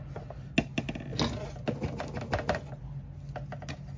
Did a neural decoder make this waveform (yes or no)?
no